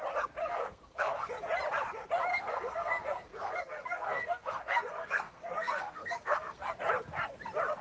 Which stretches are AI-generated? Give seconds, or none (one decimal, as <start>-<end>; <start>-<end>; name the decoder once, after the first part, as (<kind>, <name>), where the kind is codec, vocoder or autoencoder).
0.4-1.3 (codec, SNAC); 2.3-6.7

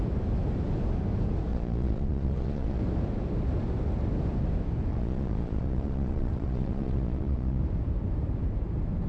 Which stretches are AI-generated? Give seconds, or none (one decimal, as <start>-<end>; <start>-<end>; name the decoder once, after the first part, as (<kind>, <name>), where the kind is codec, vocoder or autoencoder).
1.5-2.8 (vocoder, Vocos); 4.9-7.6

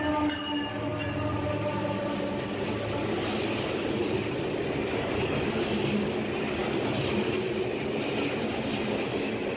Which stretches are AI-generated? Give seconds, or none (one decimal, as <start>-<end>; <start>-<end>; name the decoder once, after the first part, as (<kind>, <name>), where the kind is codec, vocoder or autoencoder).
none

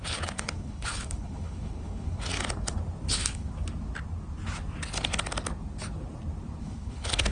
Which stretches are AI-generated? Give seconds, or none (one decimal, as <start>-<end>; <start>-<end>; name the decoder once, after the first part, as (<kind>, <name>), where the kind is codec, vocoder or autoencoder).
0.0-2.3 (codec, HILCodec); 3.1-3.5; 6.6-7.3

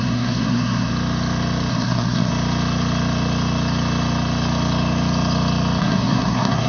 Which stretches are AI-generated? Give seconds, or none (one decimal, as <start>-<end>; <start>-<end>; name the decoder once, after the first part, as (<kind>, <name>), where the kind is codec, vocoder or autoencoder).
0.0-0.9 (codec, SNAC); 1.7-2.3; 5.8-6.7

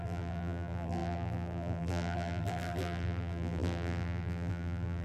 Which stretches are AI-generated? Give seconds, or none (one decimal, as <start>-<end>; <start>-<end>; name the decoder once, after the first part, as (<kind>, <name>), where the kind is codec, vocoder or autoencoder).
0.0-5.0 (vocoder, BigVGAN v2)

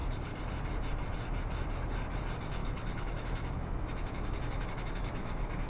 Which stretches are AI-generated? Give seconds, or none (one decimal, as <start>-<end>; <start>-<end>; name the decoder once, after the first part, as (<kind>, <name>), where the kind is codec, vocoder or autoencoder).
2.6-5.7 (autoencoder, DAC-VAE)

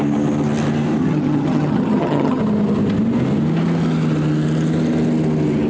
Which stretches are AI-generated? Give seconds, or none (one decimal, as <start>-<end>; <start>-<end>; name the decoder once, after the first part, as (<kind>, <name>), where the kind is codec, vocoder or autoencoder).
1.0-2.4 (vocoder, HiFi-GAN)